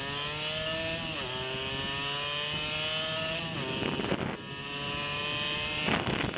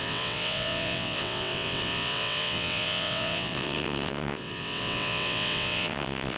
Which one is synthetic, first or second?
second